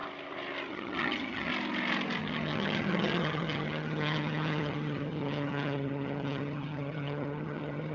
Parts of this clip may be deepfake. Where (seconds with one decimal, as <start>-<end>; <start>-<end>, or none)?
0.7-1.5; 2.2-7.9